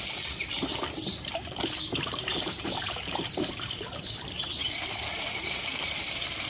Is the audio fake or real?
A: fake